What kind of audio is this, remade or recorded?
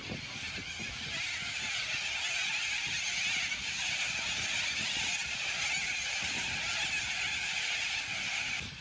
recorded